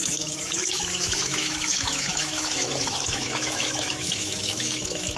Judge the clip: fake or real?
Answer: fake